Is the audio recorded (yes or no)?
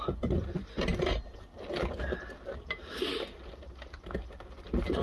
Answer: yes